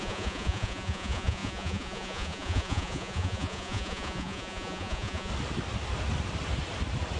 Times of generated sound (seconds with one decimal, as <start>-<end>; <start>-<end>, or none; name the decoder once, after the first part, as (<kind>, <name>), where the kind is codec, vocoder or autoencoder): 0.0-5.3 (vocoder, Vocos)

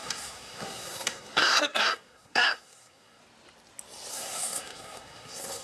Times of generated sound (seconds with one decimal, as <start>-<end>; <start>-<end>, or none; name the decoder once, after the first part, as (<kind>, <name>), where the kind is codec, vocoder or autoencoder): 0.0-3.2 (codec, SNAC); 4.1-5.6

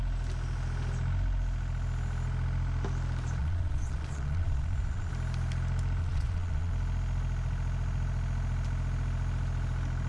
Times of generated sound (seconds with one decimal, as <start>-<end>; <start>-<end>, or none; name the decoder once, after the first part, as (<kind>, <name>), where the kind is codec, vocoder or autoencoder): 3.4-5.1 (vocoder, Vocos); 6.0-6.7

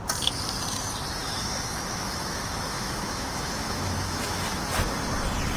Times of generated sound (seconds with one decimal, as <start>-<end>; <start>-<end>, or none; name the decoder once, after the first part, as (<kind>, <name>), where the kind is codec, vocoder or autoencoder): 1.2-4.6 (autoencoder, DAC-VAE)